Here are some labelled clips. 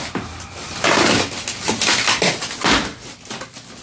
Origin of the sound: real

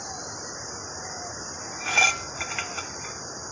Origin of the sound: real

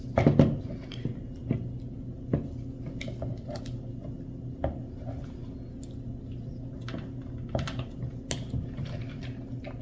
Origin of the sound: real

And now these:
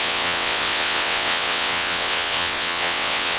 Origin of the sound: fake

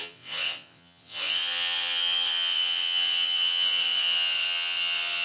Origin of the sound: fake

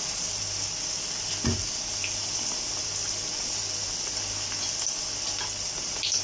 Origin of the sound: real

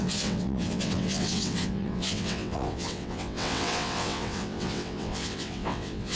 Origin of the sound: fake